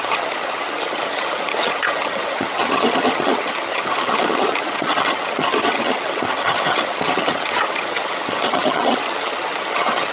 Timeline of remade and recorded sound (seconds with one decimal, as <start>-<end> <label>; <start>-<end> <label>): 0.0-10.1 remade